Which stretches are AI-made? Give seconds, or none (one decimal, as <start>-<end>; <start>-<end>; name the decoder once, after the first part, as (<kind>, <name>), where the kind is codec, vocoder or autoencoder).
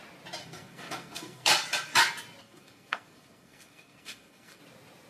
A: 0.4-1.5 (codec, SNAC); 2.4-4.6